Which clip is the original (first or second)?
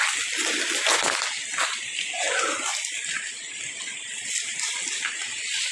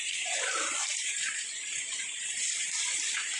first